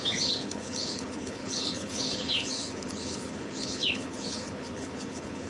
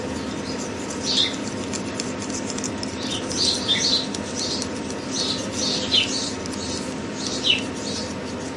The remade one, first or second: first